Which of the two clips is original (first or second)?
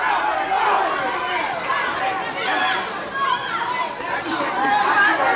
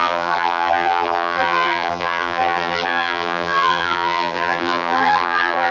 first